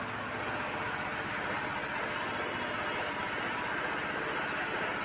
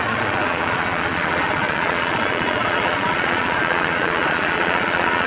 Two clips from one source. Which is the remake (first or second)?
second